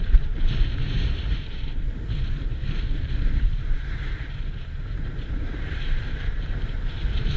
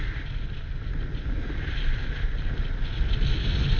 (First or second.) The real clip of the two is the second